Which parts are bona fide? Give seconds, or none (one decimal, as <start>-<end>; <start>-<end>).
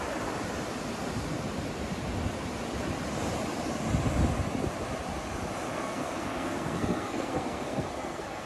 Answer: 0.0-5.7